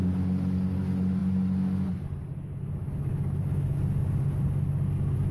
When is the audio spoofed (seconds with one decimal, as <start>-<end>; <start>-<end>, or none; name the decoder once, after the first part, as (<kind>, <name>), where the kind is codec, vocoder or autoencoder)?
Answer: none